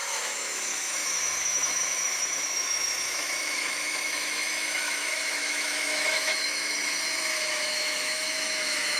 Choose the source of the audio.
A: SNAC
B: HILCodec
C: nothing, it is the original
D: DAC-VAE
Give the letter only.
D